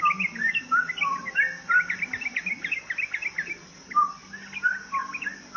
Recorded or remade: recorded